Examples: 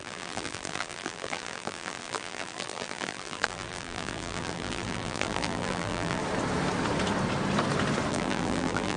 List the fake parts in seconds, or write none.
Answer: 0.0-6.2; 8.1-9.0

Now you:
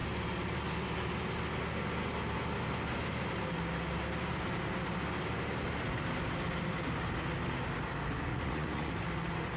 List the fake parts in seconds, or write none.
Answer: 8.3-8.9

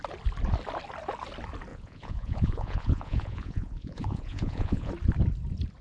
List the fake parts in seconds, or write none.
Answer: 1.7-4.9

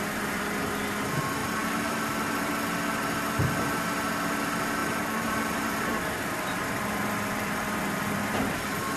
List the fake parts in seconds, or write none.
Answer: 1.4-2.5; 4.8-8.4